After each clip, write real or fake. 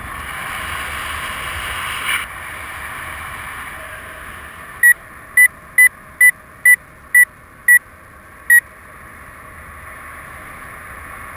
real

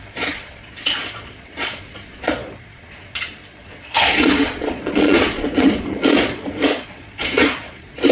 fake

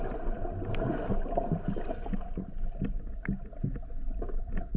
real